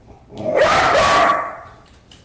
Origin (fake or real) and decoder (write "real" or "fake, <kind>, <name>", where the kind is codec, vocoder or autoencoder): fake, vocoder, BigVGAN v2